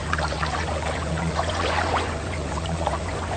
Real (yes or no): no